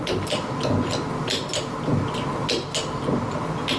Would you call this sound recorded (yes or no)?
yes